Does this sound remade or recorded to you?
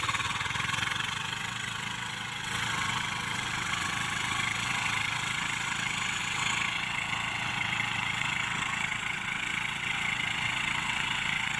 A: remade